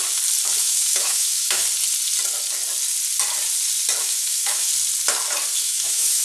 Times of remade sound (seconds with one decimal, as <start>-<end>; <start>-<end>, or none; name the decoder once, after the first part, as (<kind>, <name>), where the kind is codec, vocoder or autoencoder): 0.6-1.6 (autoencoder, DAC-VAE); 4.0-4.7; 5.6-6.2